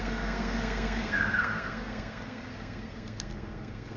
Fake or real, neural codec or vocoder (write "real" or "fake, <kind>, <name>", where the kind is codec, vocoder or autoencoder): fake, codec, SNAC